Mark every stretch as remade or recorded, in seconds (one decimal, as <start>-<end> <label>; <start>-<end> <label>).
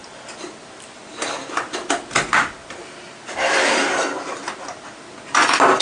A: 0.0-5.8 recorded